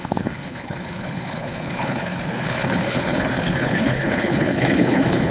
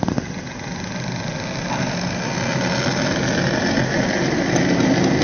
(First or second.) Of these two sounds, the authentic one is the second